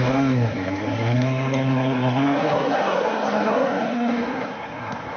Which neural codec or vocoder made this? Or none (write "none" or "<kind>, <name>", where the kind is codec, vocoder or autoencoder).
codec, SNAC